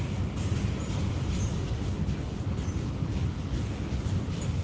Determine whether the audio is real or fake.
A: real